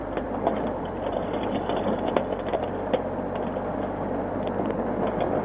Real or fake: real